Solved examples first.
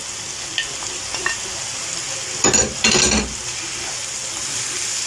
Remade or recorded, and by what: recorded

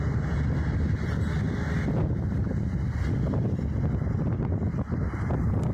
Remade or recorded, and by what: recorded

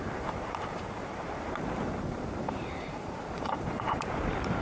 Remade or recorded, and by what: remade, vocoder, BigVGAN v2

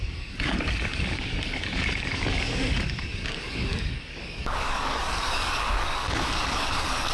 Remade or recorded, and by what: remade, codec, DAC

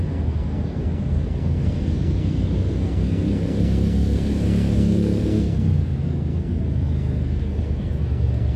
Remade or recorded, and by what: remade, codec, SNAC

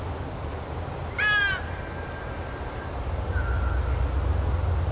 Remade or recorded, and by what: recorded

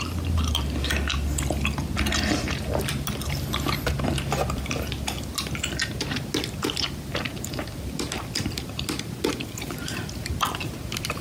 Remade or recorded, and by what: recorded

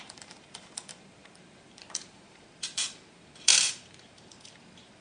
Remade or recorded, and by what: remade, vocoder, BigVGAN v2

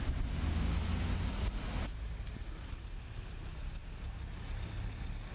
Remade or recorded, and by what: recorded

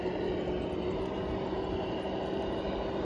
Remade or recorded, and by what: recorded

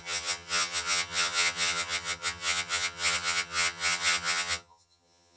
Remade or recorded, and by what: remade, vocoder, HiFi-GAN